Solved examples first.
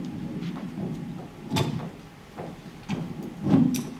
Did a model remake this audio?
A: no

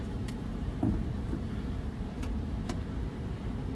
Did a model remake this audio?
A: yes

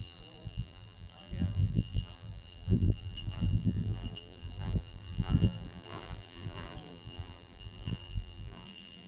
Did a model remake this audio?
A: yes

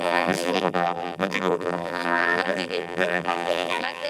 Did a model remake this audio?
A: yes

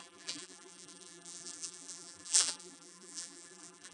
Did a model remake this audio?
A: yes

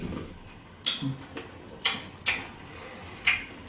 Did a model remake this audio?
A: no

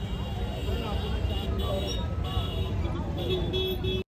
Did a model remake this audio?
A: no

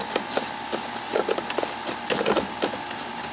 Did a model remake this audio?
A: no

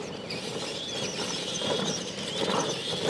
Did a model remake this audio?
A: yes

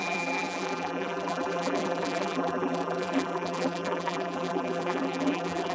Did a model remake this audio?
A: yes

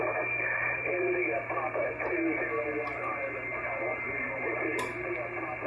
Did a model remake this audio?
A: yes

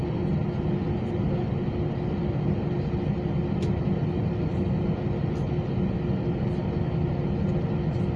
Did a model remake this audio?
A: no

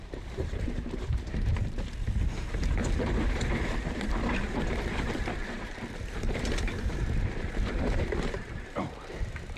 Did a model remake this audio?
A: yes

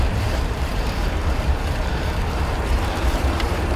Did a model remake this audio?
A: yes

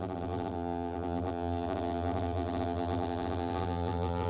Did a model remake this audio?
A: yes